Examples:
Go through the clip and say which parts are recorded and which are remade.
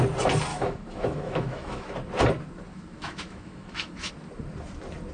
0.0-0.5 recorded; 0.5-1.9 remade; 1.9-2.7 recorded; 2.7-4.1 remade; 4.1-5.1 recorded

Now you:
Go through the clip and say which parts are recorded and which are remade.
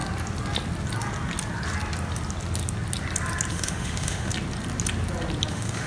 0.0-3.5 recorded; 3.5-4.3 remade; 4.3-5.5 recorded; 5.5-5.9 remade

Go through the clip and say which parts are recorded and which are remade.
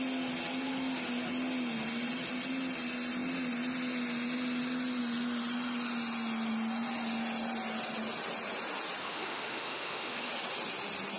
0.0-9.0 recorded; 9.0-10.3 remade; 10.3-11.2 recorded